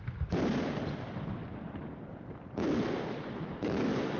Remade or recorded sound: recorded